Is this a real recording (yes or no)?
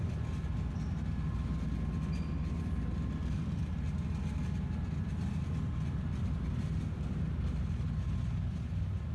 yes